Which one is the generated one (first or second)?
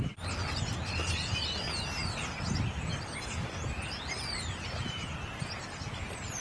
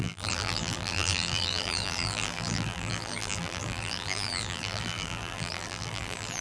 second